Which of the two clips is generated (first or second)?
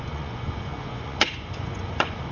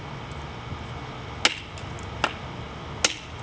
first